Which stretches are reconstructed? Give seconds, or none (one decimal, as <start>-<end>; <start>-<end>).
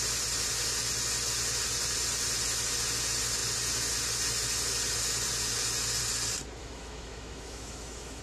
6.6-8.2